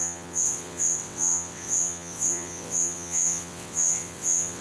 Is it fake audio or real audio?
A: fake